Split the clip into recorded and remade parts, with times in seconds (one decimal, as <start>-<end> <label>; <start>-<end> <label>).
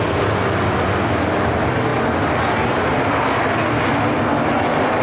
0.0-5.0 recorded